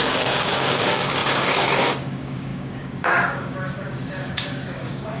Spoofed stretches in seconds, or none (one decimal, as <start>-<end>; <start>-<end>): 0.0-5.2

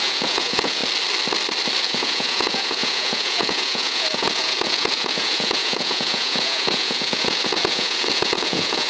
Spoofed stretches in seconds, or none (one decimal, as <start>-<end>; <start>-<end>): 0.0-0.8; 1.8-8.9

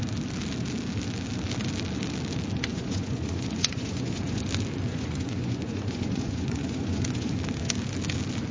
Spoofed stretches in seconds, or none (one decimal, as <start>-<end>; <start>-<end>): 2.7-4.4; 4.9-7.3

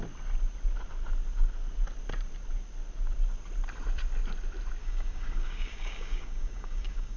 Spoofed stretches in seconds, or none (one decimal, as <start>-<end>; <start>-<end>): 4.8-7.2

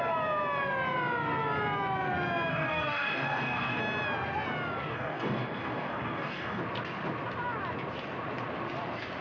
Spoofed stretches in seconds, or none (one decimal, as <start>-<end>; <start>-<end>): 2.5-3.8; 4.9-6.6

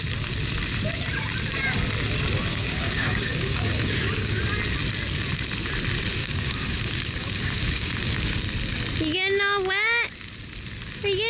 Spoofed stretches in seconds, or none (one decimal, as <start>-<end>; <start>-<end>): 2.5-4.4; 6.2-8.4

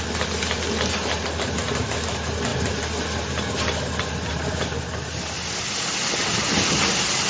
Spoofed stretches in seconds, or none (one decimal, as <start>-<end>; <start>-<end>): none

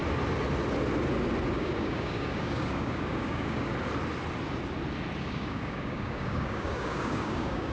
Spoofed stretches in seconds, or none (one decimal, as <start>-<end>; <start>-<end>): 1.5-3.7; 5.2-7.7